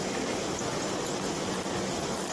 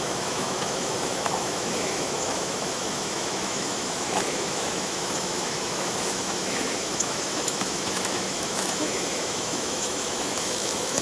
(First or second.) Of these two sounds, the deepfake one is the second